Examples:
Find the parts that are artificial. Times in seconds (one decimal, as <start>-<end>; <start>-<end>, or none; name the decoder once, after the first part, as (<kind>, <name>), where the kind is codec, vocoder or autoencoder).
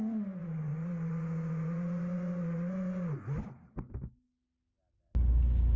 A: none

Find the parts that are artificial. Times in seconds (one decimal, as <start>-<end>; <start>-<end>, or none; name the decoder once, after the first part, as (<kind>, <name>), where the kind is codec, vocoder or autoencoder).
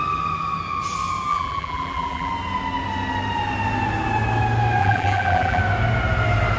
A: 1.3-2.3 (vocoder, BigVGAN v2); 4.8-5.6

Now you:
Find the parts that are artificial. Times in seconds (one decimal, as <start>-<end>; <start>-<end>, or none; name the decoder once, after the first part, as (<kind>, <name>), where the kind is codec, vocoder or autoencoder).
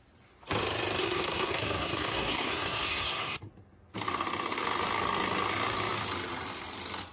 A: 1.0-3.5 (codec, SNAC)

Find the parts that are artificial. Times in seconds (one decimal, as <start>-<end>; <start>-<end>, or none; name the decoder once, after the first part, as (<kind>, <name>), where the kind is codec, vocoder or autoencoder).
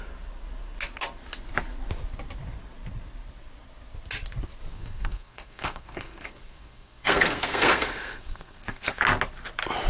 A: 4.7-9.0 (codec, SNAC)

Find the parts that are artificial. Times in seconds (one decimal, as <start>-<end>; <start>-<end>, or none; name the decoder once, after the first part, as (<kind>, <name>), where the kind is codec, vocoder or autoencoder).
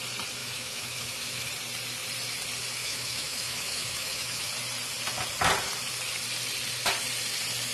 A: 0.4-1.5 (autoencoder, DAC-VAE); 2.8-4.5